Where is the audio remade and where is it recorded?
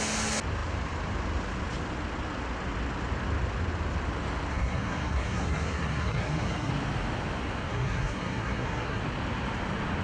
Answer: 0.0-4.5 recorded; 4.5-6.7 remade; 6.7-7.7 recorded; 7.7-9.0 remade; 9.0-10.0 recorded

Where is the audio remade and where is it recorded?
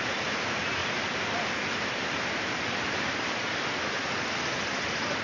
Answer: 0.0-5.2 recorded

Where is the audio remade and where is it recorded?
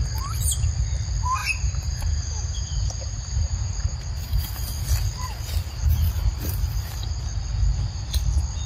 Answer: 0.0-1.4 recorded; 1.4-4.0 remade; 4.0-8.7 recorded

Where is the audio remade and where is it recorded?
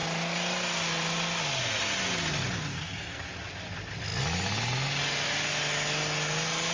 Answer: 0.0-2.7 recorded; 2.7-3.2 remade; 3.2-6.7 recorded